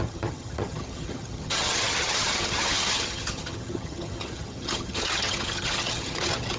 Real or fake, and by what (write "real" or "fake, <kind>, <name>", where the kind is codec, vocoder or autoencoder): fake, vocoder, HiFi-GAN